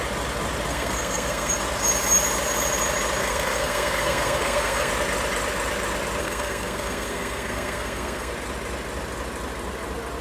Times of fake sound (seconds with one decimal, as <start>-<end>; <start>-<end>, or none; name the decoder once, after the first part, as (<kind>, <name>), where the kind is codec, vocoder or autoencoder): 0.7-1.5 (codec, SNAC); 3.2-4.9; 6.2-8.3